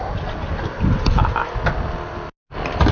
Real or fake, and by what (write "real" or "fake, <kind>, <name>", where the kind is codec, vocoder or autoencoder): real